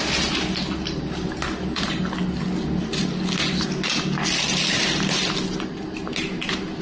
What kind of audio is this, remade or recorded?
recorded